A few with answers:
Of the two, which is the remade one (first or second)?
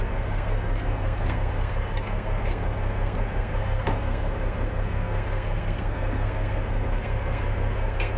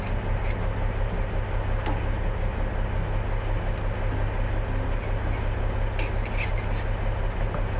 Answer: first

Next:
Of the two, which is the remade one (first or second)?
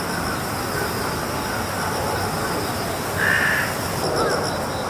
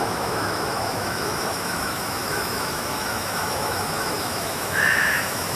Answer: second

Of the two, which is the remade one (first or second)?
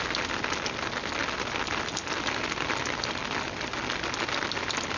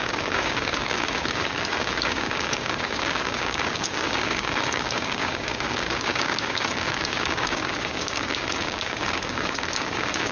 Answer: second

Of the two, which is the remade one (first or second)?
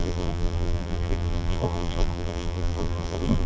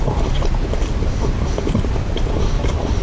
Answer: first